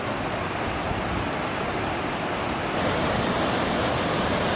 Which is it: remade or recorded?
recorded